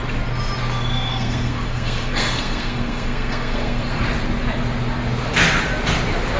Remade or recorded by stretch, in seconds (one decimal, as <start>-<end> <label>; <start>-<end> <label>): 0.0-0.9 recorded; 0.9-4.0 remade; 4.0-6.4 recorded